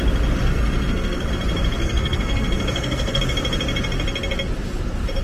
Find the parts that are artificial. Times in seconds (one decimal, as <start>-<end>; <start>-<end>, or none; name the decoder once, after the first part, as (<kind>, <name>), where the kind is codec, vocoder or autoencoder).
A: 0.5-1.3 (codec, SNAC); 1.8-3.2